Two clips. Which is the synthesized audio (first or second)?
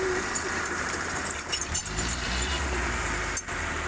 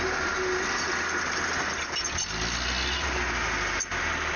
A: first